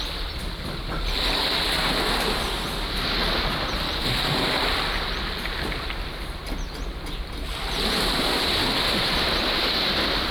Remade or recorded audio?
recorded